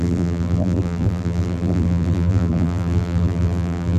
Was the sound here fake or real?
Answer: fake